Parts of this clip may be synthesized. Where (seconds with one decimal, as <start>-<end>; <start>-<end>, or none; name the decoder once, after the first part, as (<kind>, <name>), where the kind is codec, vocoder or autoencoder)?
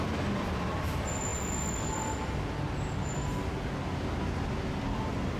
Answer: none